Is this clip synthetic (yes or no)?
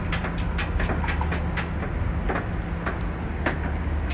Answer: no